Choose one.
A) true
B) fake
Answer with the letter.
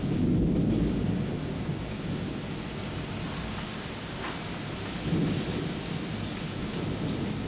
A